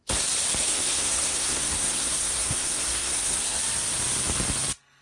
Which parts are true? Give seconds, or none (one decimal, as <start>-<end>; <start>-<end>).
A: 0.0-0.6; 3.6-5.0

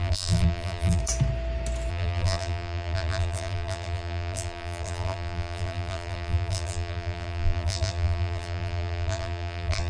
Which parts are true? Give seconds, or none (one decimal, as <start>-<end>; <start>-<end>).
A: 1.0-1.9

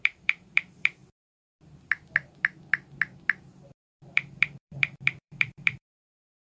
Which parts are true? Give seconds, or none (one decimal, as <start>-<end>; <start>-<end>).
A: 1.0-4.1

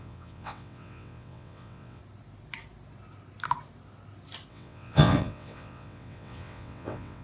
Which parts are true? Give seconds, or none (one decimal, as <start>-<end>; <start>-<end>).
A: 2.0-4.5

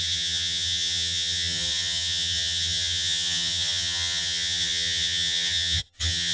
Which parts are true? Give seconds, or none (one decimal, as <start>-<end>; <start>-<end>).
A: none

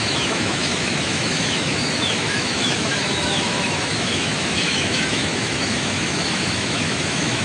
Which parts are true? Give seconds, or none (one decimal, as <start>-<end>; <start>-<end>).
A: none

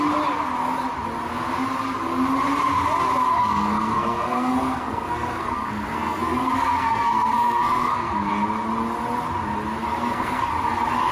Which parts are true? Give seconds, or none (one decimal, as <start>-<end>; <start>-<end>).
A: 0.0-3.4; 8.3-9.8; 10.5-11.1